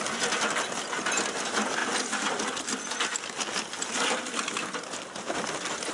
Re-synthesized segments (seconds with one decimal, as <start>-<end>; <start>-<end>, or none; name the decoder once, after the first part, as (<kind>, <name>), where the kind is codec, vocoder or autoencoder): none